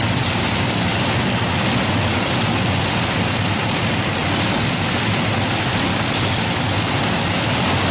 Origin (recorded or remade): recorded